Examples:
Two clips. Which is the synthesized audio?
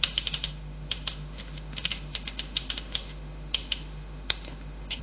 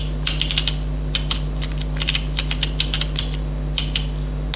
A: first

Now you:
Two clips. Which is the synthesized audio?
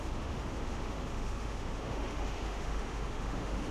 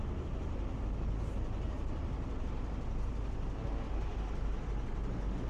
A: first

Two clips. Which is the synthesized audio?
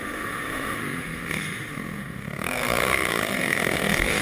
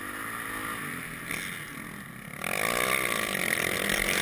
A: first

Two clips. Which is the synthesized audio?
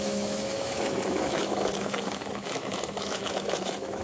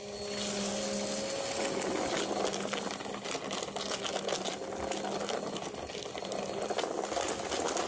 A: first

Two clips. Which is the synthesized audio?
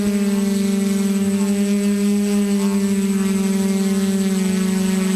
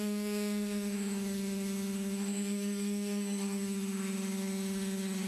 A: second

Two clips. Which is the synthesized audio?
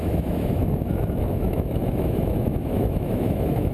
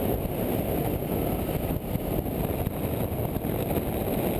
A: first